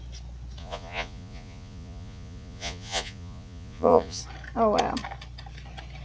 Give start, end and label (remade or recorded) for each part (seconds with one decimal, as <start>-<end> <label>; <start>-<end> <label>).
0.0-0.6 recorded; 0.6-4.2 remade; 4.2-6.0 recorded